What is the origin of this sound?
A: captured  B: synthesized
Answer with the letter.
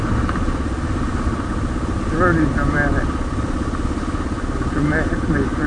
A